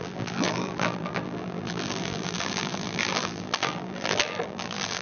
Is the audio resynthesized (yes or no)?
yes